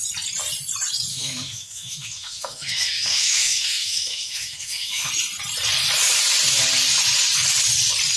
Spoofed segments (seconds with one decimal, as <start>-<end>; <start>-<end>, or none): 1.1-5.1